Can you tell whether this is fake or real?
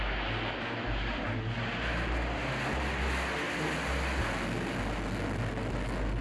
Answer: real